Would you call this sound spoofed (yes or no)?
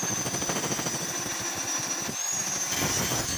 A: no